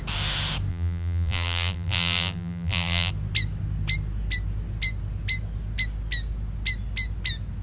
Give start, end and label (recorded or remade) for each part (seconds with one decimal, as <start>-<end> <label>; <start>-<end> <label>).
0.0-0.7 recorded; 0.7-3.1 remade; 3.1-7.6 recorded